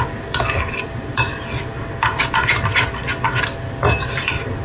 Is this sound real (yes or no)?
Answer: yes